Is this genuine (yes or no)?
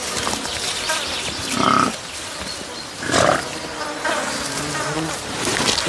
yes